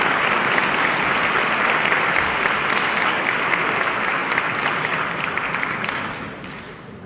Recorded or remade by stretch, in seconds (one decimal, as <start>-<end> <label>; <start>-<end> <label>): 0.0-3.0 recorded; 3.0-3.5 remade; 3.5-7.1 recorded